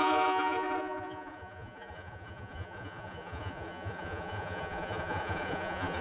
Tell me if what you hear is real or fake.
fake